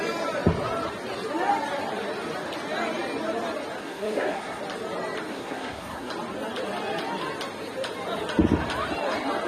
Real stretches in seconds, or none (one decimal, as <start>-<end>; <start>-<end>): 0.0-3.8; 4.6-5.3; 6.1-9.5